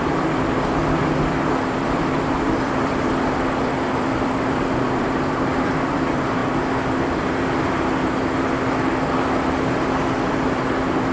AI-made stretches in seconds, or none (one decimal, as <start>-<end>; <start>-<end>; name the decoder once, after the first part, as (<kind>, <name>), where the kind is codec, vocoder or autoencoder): 0.0-6.4 (vocoder, BigVGAN v2); 10.2-11.1